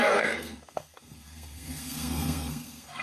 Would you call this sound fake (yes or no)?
yes